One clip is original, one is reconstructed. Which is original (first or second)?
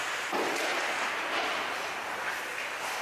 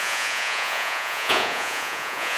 first